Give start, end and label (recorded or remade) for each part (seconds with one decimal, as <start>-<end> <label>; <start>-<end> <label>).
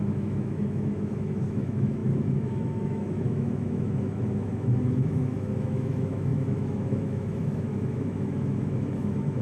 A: 0.0-9.4 remade